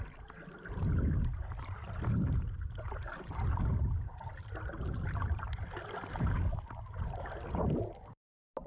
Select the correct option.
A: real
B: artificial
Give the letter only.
A